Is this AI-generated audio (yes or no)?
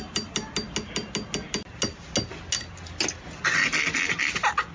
no